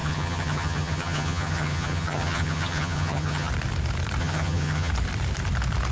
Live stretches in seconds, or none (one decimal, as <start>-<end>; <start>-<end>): 3.5-4.2; 4.9-5.9